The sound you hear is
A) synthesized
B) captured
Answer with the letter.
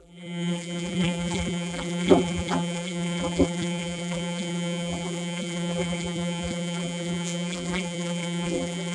A